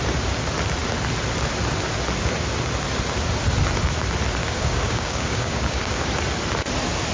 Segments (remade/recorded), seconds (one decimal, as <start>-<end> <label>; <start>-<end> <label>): 0.0-4.4 recorded; 4.4-6.0 remade; 6.0-7.1 recorded